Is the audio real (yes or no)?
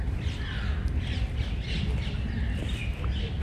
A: yes